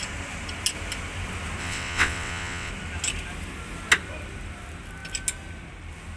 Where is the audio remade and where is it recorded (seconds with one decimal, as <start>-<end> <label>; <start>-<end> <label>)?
0.0-1.6 recorded; 1.6-2.7 remade; 2.7-6.2 recorded